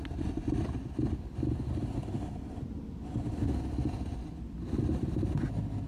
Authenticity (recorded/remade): recorded